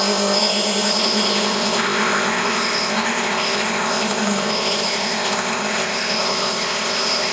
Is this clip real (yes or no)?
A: no